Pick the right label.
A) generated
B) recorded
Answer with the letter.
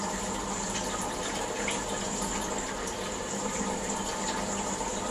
B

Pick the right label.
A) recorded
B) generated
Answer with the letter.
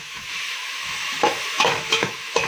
B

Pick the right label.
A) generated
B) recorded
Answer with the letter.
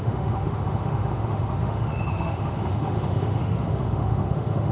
A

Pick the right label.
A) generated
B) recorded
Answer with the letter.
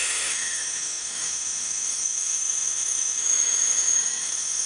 A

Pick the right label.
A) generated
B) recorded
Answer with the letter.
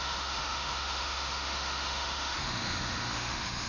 A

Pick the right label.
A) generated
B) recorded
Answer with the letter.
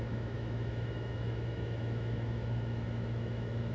A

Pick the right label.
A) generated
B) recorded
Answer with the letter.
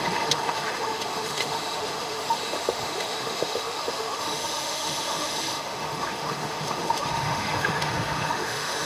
A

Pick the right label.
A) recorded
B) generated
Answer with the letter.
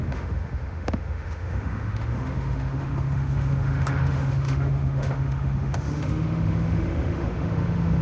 B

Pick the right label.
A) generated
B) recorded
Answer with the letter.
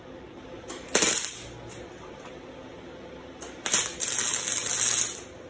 B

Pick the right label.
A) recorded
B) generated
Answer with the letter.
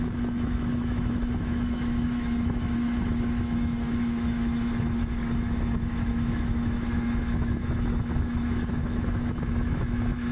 B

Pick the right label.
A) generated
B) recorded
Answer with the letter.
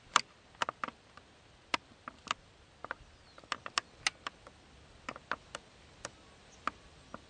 B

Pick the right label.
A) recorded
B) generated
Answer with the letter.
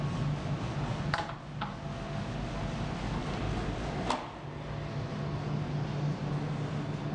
A